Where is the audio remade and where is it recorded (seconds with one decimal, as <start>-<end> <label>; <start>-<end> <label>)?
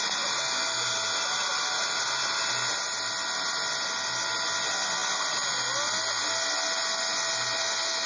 0.0-8.1 recorded